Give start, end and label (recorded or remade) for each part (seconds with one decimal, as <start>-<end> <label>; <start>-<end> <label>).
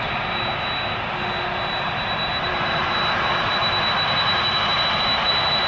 0.0-2.3 recorded; 2.3-3.5 remade; 3.5-5.7 recorded